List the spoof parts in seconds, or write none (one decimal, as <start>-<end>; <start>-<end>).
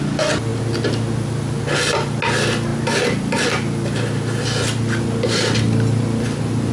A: none